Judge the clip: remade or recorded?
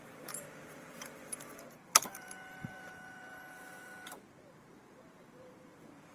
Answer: remade